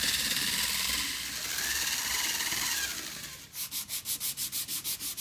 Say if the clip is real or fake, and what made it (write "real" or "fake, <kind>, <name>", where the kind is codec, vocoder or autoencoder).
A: real